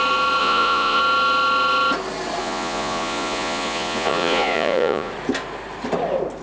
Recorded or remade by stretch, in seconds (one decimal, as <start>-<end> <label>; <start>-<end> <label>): 0.0-0.4 recorded; 0.4-1.0 remade; 1.0-2.4 recorded; 2.4-5.1 remade; 5.1-6.4 recorded